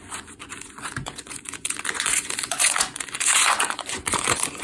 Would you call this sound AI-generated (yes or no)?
yes